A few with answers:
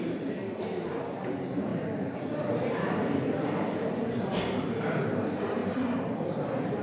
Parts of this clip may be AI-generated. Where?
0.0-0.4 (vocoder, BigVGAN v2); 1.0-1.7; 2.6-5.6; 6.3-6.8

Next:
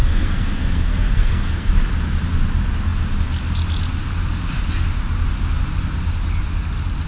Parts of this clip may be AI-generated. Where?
0.0-1.7 (codec, SNAC)

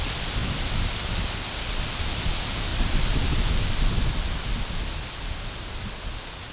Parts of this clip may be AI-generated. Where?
none

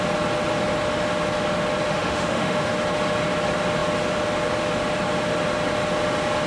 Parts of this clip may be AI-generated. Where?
1.9-2.7 (autoencoder, DAC-VAE)

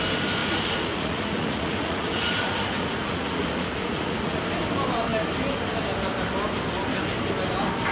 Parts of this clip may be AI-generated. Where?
0.4-4.4 (vocoder, Vocos)